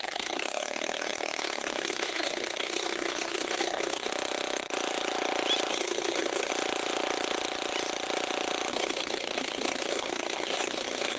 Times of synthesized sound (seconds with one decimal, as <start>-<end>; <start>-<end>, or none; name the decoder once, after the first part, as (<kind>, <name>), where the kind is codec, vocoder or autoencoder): 0.0-4.1 (codec, SNAC); 5.7-6.5; 8.7-11.2